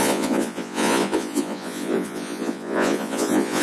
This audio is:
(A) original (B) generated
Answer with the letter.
B